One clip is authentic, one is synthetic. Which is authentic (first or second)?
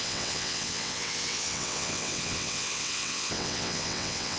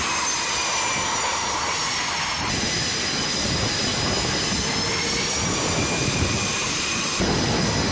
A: second